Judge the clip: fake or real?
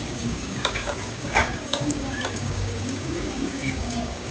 fake